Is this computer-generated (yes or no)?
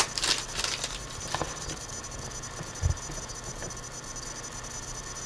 no